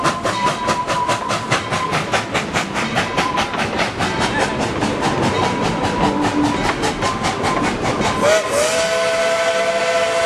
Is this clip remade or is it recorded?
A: recorded